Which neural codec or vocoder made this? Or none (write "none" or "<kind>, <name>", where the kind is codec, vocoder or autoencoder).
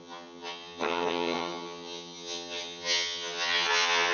vocoder, HiFi-GAN